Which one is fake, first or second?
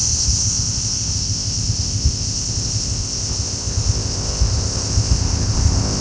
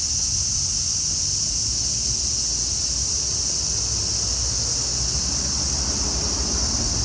first